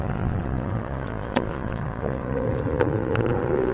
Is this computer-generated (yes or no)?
yes